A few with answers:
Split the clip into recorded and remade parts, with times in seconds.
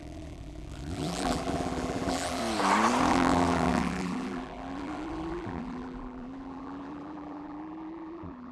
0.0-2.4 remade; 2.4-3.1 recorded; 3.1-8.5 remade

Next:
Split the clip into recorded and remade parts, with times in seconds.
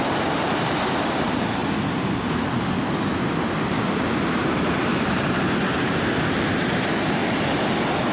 0.0-1.6 remade; 1.6-4.4 recorded; 4.4-7.2 remade; 7.2-8.1 recorded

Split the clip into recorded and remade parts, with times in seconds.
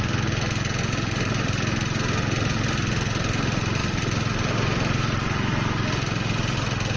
0.0-3.8 recorded; 3.8-4.4 remade; 4.4-7.0 recorded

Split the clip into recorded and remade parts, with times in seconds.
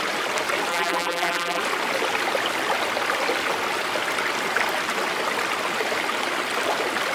0.0-0.7 recorded; 0.7-1.6 remade; 1.6-7.1 recorded